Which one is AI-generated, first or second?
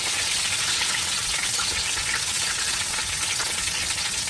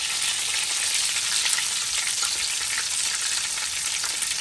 first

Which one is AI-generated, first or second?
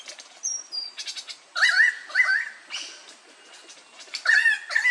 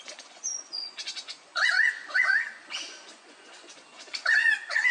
second